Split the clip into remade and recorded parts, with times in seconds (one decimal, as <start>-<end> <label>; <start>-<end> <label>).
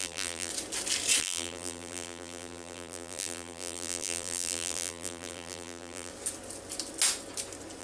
0.0-0.5 remade; 0.5-1.2 recorded; 1.2-6.1 remade; 6.1-7.8 recorded